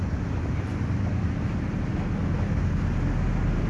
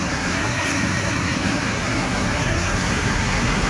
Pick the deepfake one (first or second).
second